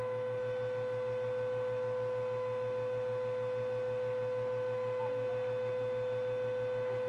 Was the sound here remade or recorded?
recorded